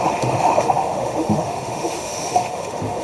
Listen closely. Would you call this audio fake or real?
fake